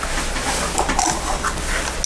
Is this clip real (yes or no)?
yes